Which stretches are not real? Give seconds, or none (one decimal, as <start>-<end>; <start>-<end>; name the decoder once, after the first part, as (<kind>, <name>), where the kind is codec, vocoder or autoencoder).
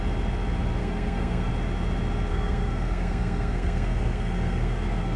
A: 0.8-1.5 (codec, SNAC); 2.3-5.2